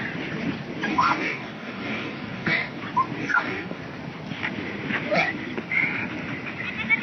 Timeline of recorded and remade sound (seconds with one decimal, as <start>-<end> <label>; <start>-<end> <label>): 0.0-0.9 recorded; 0.9-2.8 remade; 2.8-3.2 recorded; 3.2-3.8 remade; 3.8-7.0 recorded